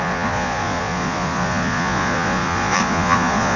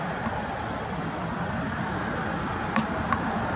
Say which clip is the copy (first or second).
first